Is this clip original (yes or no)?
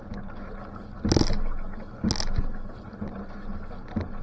yes